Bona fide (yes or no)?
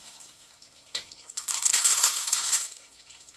no